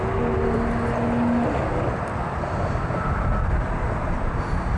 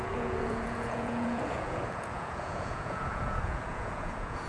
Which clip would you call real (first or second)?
first